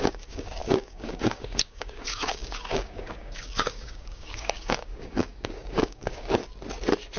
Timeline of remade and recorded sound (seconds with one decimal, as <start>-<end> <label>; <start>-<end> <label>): 0.0-6.4 remade; 6.4-7.2 recorded